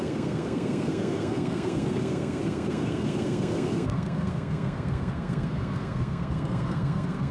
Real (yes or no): no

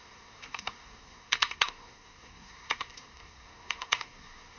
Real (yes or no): no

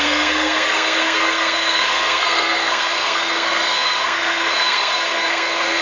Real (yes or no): no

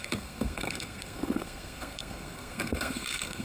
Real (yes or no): no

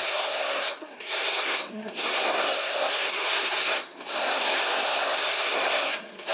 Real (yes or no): no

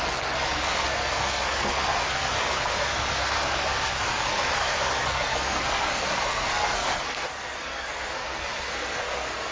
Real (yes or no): no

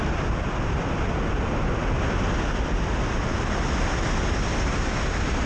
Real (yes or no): yes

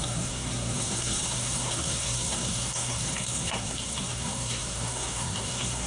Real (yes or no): no